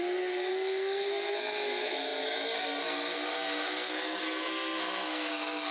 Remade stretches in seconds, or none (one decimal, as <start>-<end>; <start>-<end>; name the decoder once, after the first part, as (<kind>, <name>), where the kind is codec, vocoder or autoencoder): 0.0-5.7 (codec, SNAC)